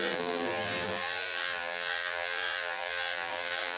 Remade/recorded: remade